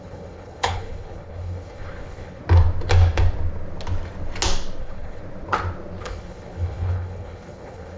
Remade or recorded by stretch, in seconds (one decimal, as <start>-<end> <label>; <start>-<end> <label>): 0.0-2.4 remade; 2.4-4.8 recorded; 4.8-5.2 remade; 5.2-6.0 recorded; 6.0-8.0 remade